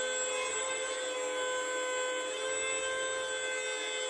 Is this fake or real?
real